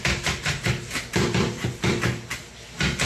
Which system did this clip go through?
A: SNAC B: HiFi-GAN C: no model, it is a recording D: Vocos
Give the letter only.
C